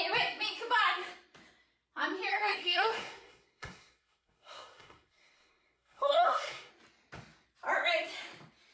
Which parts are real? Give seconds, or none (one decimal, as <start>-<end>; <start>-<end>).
0.0-2.3; 6.7-8.7